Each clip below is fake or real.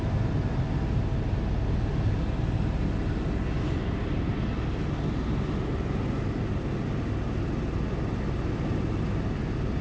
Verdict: real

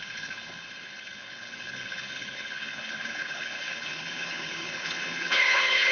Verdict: fake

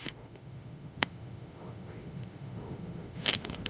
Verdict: fake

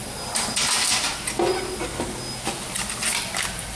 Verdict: real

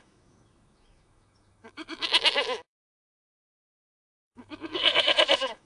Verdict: fake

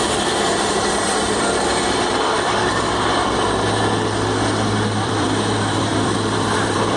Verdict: fake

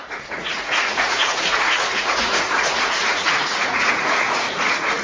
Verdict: fake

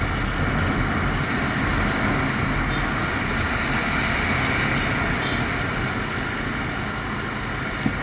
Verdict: real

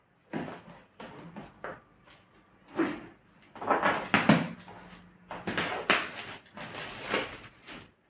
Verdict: real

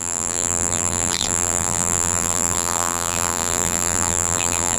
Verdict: fake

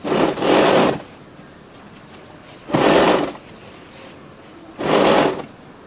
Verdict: real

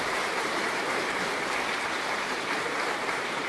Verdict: fake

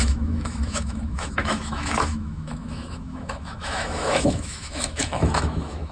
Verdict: fake